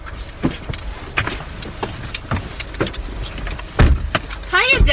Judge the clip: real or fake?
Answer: real